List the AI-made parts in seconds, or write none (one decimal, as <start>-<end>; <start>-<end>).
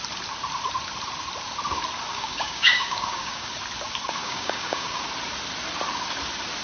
2.1-3.5; 4.2-5.0